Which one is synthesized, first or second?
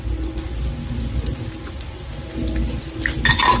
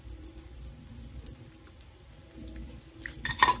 second